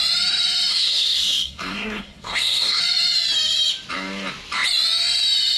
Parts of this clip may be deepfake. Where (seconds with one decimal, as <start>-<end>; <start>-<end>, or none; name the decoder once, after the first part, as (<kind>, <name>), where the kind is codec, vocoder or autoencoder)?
0.7-2.8 (codec, SNAC)